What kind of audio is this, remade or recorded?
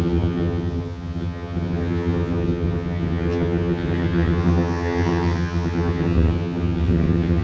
remade